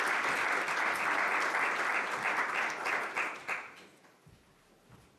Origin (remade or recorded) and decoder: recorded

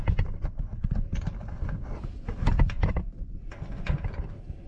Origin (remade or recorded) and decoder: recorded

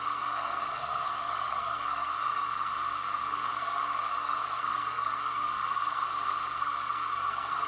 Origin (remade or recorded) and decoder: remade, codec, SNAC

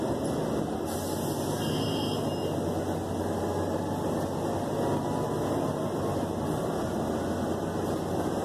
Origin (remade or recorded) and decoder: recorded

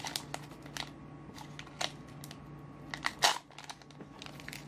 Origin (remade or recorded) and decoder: recorded